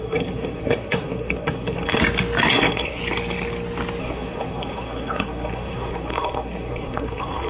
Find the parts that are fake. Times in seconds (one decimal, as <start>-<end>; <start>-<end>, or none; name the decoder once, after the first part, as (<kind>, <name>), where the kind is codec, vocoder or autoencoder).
0.0-2.0 (codec, SNAC); 2.5-3.0; 4.0-7.5